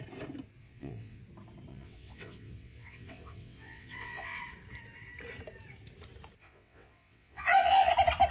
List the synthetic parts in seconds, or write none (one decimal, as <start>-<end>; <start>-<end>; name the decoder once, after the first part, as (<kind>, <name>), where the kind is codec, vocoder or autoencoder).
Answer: 0.6-1.2 (vocoder, WaveNeXt); 1.7-4.4; 6.4-7.9